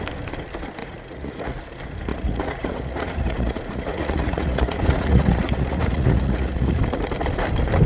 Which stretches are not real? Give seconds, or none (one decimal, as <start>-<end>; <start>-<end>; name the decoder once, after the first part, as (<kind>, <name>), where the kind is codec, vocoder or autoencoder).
0.8-1.6 (vocoder, Vocos); 2.1-6.8